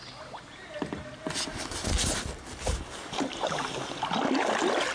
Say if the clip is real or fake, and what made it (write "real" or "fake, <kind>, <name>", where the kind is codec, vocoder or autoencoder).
real